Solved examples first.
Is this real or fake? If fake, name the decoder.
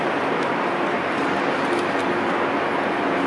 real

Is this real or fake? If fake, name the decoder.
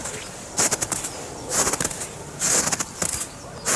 real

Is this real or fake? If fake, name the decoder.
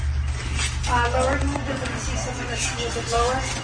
real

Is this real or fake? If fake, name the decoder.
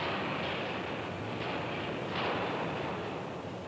real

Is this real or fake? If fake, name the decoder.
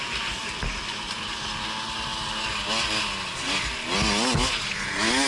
real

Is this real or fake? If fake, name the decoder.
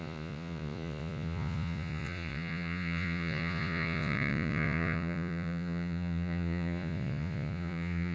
fake, vocoder, Vocos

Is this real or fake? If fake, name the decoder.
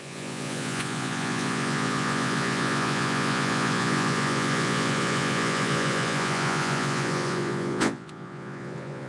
fake, vocoder, Vocos